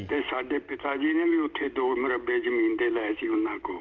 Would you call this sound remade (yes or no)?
no